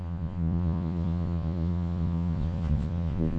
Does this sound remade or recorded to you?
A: remade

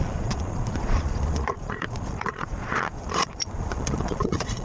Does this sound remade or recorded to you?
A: remade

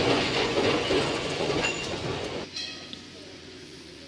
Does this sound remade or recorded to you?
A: remade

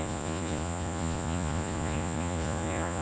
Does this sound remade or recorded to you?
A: remade